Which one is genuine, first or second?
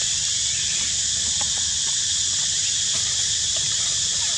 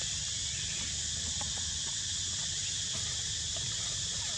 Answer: second